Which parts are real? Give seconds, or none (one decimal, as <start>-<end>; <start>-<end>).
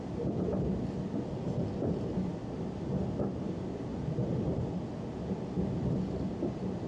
0.0-6.9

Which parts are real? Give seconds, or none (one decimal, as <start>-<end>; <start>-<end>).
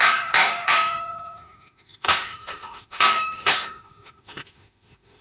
none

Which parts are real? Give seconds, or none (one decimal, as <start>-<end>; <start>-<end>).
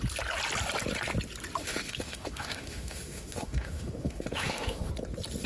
0.0-1.6; 4.9-5.5